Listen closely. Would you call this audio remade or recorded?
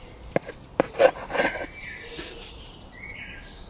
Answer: recorded